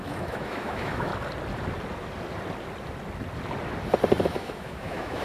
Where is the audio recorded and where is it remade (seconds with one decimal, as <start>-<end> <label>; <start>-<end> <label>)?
0.0-1.1 remade; 1.1-4.2 recorded; 4.2-5.2 remade